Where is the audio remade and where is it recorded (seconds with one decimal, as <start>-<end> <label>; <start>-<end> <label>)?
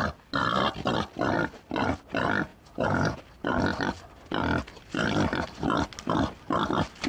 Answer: 0.0-2.5 recorded; 2.5-3.2 remade; 3.2-7.1 recorded